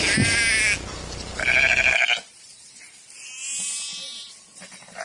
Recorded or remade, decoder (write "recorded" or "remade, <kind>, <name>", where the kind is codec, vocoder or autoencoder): recorded